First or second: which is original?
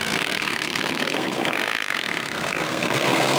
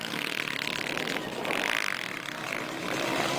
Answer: second